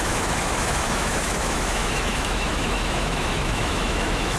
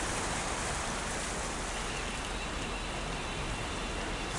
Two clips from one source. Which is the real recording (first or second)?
second